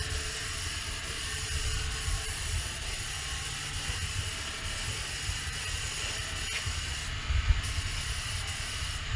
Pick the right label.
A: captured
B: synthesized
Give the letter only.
A